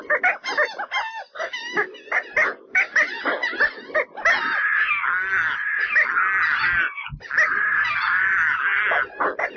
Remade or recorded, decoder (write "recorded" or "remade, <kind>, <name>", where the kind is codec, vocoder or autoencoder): recorded